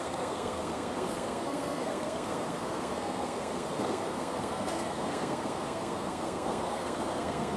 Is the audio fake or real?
fake